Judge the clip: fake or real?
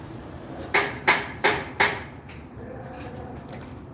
fake